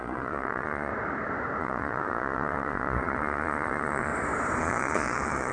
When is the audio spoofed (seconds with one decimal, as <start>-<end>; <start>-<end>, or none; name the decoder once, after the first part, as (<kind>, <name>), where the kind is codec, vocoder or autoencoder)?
0.0-0.9 (vocoder, Vocos); 1.6-4.1; 4.6-5.5